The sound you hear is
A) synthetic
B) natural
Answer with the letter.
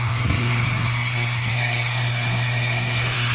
A